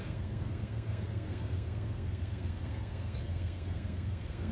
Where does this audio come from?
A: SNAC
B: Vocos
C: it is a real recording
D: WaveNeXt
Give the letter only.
A